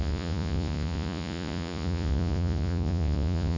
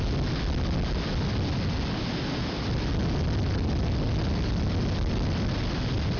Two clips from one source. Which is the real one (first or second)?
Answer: second